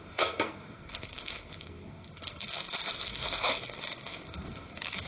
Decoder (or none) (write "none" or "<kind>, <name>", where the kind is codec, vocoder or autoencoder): codec, SNAC